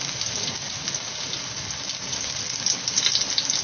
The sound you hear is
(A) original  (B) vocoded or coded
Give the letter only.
A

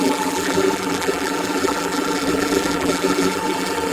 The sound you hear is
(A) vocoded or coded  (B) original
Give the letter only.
A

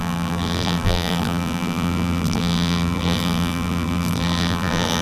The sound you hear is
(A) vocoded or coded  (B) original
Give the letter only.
A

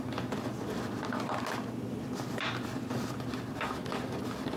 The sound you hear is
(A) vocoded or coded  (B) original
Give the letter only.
B